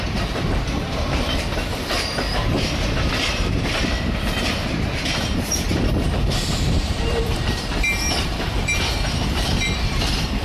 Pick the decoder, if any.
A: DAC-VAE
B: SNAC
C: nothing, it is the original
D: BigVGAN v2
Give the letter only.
D